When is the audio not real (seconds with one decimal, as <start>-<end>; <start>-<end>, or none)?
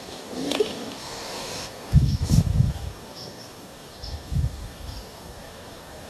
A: 0.0-6.1